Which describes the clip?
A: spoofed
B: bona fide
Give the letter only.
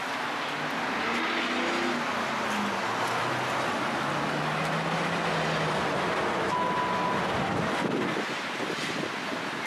B